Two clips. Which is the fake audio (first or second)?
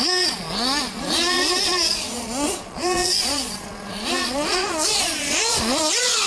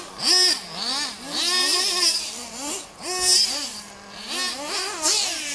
first